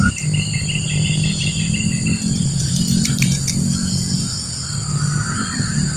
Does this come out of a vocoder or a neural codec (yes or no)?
no